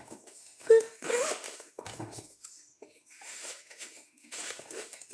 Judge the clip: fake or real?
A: fake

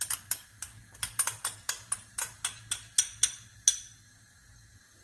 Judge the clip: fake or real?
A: real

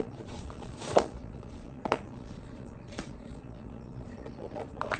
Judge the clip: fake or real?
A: fake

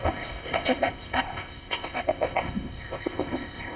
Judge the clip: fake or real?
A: fake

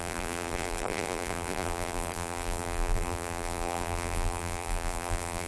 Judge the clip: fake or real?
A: fake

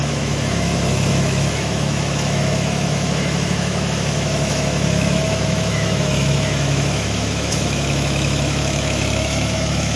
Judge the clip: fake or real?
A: fake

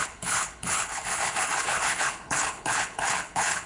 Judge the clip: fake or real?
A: fake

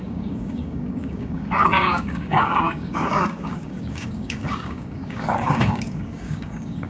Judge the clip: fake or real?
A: fake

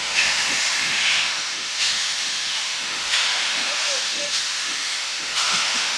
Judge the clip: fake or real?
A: fake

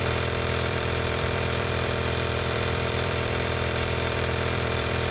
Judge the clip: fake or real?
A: fake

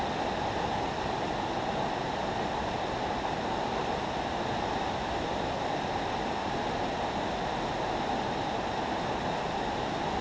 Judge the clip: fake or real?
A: real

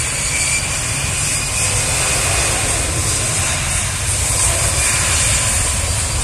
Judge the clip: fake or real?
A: real